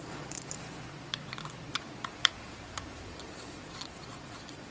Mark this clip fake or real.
fake